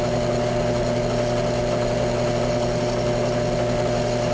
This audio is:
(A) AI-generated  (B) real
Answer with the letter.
B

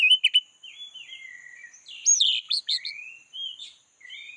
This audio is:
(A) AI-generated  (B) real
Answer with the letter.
B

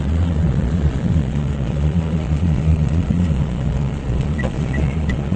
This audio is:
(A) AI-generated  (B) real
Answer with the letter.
A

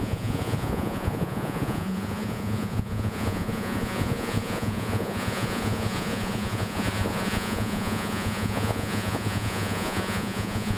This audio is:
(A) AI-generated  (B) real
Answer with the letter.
A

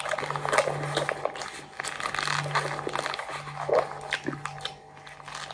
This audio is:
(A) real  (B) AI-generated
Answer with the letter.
A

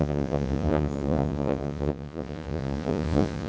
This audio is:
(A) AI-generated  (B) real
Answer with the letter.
A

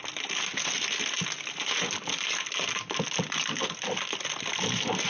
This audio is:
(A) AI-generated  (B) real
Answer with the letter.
B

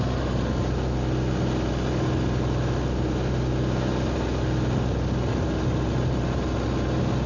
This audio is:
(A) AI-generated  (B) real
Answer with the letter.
B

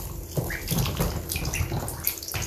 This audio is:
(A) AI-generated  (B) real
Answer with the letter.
B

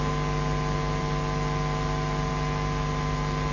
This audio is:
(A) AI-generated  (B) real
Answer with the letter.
B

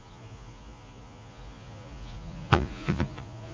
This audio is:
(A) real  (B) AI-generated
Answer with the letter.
B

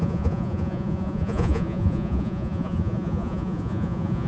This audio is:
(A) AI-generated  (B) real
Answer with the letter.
A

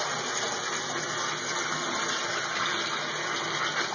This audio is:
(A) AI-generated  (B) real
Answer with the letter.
B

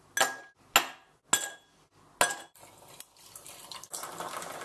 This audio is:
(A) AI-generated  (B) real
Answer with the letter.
B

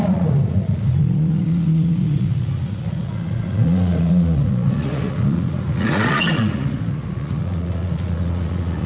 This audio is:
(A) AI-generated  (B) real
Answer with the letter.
A